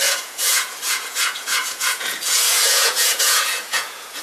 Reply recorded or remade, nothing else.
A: remade